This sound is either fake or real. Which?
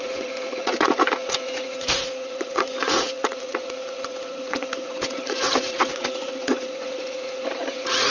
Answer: fake